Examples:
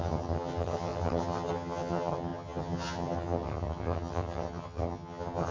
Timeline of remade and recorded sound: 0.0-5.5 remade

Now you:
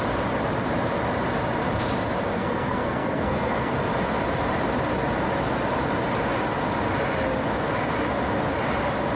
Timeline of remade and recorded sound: 0.0-2.3 recorded; 2.3-3.7 remade; 3.7-9.2 recorded

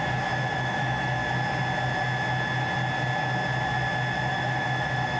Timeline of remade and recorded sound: 0.0-1.2 remade; 1.2-4.3 recorded; 4.3-5.2 remade

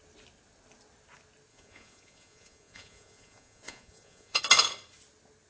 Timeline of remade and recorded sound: 0.0-1.5 recorded; 1.5-4.4 remade; 4.4-5.5 recorded

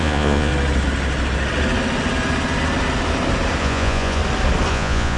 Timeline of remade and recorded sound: 0.0-0.5 remade; 0.5-3.6 recorded; 3.6-4.2 remade; 4.2-4.7 recorded; 4.7-5.2 remade

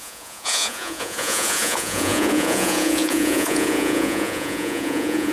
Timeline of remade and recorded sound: 0.0-5.3 remade

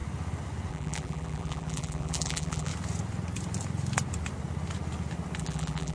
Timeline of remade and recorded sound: 0.0-0.7 recorded; 0.7-2.7 remade; 2.7-5.4 recorded; 5.4-5.9 remade

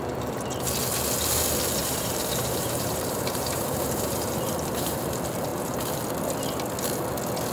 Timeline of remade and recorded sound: 0.0-1.8 recorded; 1.8-5.1 remade; 5.1-5.5 recorded; 5.5-6.0 remade; 6.0-7.5 recorded